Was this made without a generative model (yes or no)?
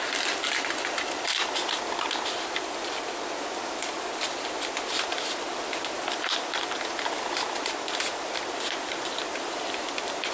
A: no